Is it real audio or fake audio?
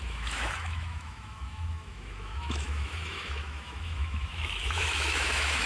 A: fake